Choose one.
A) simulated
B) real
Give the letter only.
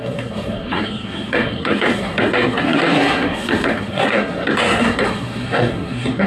A